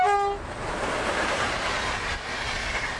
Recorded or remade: recorded